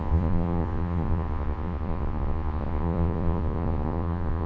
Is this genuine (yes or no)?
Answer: no